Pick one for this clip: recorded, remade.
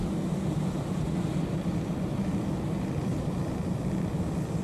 recorded